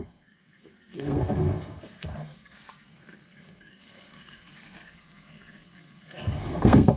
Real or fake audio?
fake